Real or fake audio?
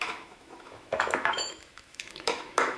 fake